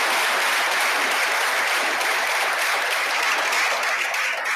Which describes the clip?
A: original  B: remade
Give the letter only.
A